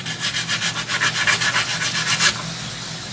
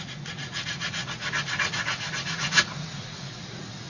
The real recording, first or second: first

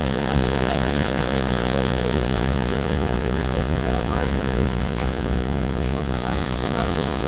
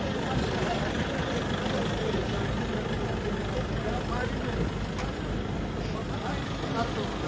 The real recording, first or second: second